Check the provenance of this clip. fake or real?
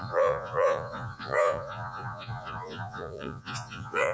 fake